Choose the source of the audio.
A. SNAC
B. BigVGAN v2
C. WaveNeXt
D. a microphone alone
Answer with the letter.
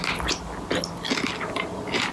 D